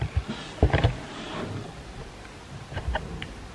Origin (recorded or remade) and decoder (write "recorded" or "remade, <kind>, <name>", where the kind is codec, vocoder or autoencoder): recorded